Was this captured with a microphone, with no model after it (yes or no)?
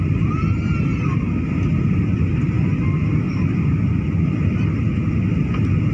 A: yes